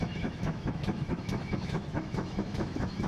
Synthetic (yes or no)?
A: yes